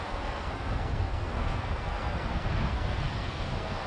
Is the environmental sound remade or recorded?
remade